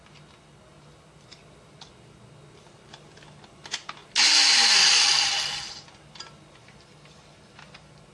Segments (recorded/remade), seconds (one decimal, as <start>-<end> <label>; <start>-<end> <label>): 0.0-8.1 recorded